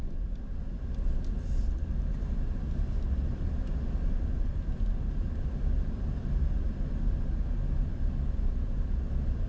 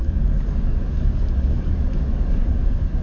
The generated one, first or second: second